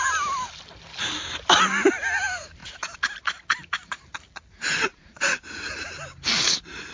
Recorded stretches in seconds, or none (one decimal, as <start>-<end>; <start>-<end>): 0.0-4.9; 5.7-6.9